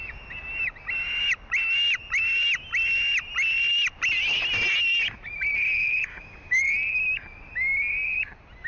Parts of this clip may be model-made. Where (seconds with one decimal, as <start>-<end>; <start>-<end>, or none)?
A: 6.1-6.6